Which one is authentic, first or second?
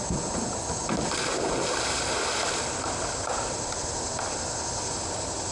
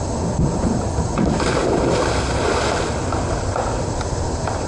first